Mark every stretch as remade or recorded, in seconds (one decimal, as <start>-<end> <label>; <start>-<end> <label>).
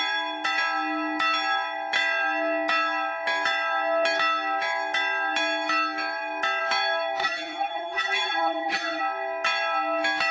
0.0-7.2 recorded; 7.2-9.0 remade; 9.0-10.3 recorded